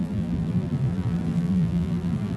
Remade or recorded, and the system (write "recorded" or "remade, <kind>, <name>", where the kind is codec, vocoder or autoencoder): remade, vocoder, BigVGAN v2